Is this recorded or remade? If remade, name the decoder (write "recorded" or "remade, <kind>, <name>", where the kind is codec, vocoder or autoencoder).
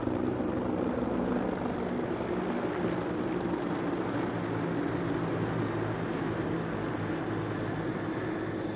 recorded